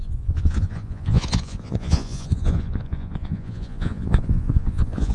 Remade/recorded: remade